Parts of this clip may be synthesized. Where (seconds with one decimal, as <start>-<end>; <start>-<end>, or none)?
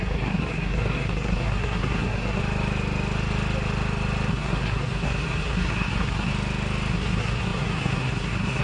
0.0-2.4; 4.3-6.3; 6.9-8.6